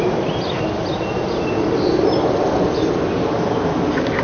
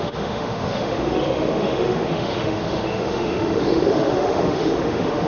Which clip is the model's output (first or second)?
second